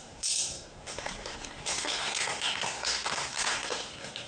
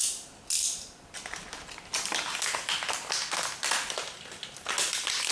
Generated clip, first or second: first